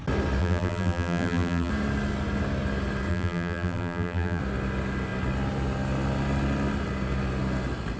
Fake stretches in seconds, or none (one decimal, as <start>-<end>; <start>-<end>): 0.4-1.7; 3.1-4.4